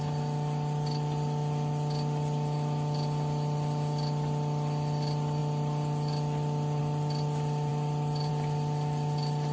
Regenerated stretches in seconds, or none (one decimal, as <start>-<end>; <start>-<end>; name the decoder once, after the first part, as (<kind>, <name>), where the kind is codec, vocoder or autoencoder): none

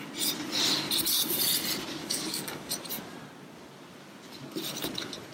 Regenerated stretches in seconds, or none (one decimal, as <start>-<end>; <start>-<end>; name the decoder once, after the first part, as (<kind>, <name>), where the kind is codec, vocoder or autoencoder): 2.0-2.7 (codec, DAC)

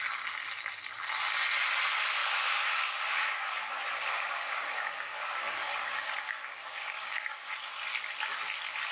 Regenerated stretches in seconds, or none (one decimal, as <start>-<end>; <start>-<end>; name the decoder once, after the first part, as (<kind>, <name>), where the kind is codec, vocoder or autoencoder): 2.2-3.6 (codec, DAC); 4.1-7.5

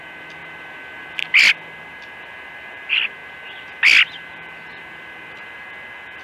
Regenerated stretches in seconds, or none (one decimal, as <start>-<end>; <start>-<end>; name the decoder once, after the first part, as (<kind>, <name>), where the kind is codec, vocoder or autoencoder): none

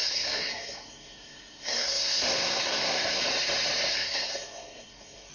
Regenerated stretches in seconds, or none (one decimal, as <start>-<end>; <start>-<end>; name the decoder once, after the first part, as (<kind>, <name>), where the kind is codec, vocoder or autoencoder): 0.0-3.2 (codec, SNAC); 3.9-5.3

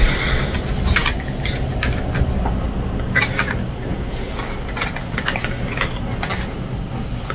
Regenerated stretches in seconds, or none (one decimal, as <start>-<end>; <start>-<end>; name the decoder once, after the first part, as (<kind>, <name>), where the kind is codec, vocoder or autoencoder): none

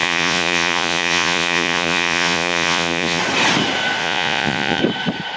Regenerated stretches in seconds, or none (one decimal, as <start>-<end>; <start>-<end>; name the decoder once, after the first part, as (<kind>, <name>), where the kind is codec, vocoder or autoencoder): 0.0-3.2 (vocoder, Vocos); 4.0-4.8

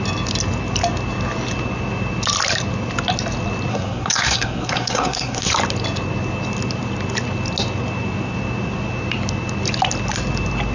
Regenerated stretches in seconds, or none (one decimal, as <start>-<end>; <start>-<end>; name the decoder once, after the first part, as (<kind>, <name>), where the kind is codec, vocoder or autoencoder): 3.7-5.5 (codec, SNAC)